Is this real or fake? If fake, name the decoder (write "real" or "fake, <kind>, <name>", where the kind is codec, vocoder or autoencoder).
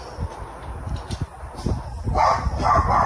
real